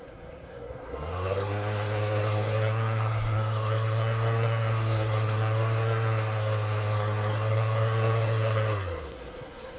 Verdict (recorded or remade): remade